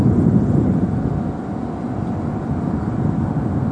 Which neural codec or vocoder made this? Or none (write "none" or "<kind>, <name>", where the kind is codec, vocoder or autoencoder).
none